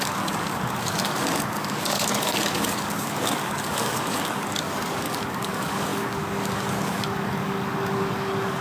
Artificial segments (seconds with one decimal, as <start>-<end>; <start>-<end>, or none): 0.0-8.6